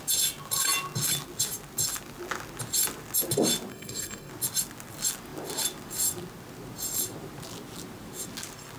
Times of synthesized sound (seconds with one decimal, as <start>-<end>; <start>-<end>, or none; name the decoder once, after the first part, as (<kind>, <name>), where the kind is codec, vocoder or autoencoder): 3.7-4.3 (codec, SNAC)